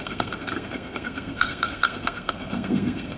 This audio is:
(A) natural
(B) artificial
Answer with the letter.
B